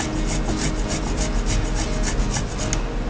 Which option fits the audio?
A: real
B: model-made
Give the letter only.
A